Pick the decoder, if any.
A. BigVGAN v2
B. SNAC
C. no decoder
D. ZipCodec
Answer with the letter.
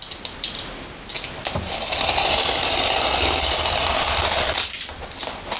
C